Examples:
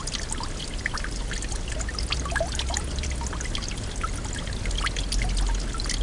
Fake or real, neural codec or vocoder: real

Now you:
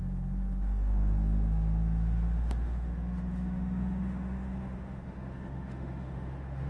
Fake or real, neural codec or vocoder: fake, autoencoder, DAC-VAE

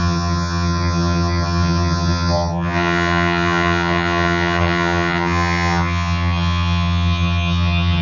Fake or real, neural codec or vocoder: fake, vocoder, HiFi-GAN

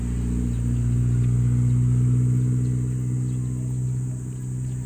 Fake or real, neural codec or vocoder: real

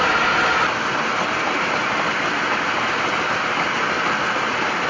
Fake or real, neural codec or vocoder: real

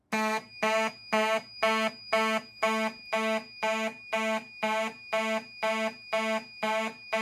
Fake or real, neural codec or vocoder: real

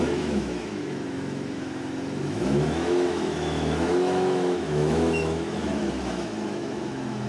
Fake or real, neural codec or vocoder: fake, autoencoder, DAC-VAE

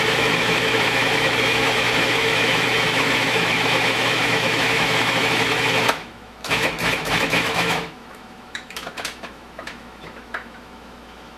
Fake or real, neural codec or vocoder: fake, autoencoder, DAC-VAE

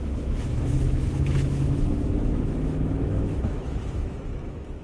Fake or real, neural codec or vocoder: fake, autoencoder, DAC-VAE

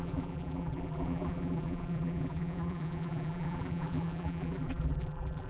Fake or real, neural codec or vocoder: fake, vocoder, BigVGAN v2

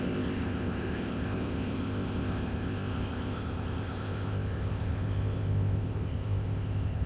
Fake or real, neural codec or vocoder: fake, codec, ZipCodec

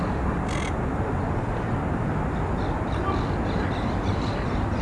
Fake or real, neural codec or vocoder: real